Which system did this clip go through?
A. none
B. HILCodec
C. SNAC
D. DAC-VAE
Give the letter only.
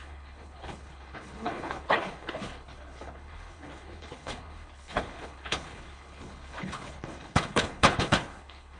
B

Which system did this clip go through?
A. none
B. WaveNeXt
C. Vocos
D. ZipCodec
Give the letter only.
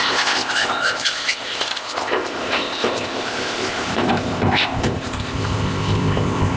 D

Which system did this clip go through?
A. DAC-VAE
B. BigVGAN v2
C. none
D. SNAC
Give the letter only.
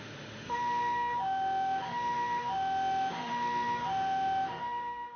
A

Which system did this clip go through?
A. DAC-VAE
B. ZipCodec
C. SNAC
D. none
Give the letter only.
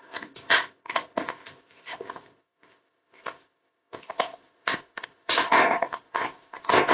B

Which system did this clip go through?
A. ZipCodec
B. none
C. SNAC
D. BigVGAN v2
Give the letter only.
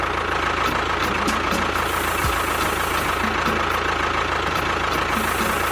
B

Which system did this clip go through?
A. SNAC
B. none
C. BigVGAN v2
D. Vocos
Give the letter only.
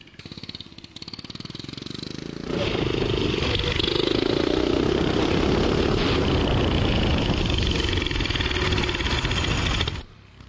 B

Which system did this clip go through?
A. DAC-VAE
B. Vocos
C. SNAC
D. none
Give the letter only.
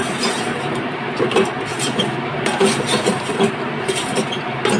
D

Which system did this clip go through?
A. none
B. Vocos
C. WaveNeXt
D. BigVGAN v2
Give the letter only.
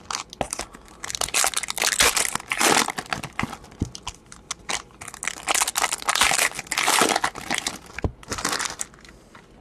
A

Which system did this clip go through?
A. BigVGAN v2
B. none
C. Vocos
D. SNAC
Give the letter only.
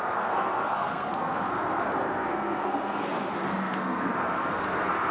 D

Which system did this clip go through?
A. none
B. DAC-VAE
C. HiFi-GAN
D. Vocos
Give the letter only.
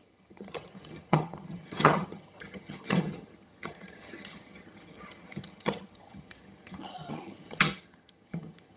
C